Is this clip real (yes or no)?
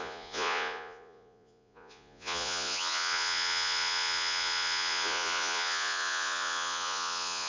no